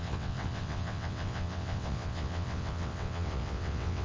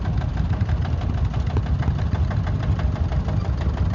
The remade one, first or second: first